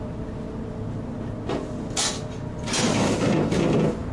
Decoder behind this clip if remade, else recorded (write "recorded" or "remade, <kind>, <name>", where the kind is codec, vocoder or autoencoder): recorded